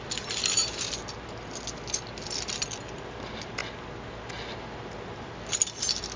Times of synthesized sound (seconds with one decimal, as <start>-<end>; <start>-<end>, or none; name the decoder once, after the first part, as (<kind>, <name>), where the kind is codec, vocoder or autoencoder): none